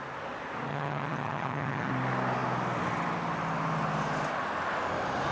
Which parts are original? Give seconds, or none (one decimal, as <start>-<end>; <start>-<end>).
0.0-0.7; 1.9-5.3

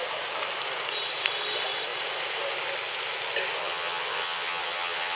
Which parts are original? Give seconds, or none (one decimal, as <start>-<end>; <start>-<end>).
0.0-3.6

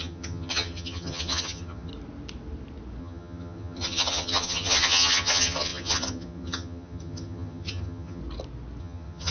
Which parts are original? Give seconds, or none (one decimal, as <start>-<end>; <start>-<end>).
1.9-3.0; 8.2-8.8

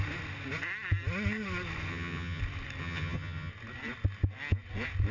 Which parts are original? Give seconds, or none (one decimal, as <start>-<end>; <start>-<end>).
0.0-1.9; 2.4-2.8; 3.5-5.1

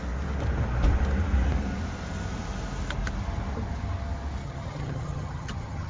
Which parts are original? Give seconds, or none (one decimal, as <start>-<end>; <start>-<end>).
0.0-4.4

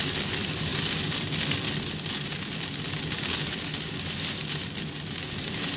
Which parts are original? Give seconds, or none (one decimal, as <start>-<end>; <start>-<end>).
0.0-5.8